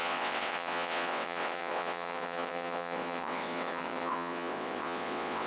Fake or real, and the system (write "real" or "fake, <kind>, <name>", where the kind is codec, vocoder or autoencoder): fake, vocoder, WaveNeXt